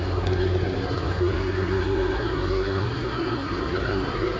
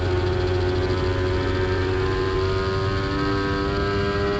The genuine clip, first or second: second